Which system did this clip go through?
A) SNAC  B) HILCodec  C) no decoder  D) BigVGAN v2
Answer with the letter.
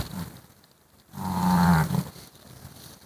C